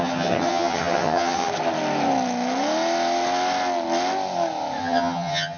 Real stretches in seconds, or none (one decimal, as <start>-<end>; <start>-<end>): 1.5-4.8